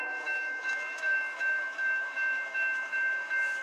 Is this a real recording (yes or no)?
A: no